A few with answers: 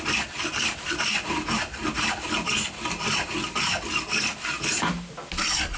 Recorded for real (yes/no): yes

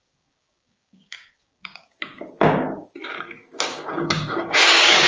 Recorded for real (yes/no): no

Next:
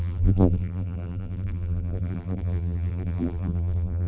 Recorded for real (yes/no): no